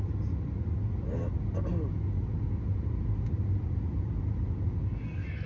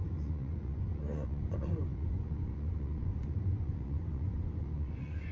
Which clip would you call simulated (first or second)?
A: second